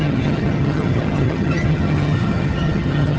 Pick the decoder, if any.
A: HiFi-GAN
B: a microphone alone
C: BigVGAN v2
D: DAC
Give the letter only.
A